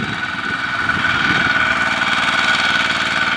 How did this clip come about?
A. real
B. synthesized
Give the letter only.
A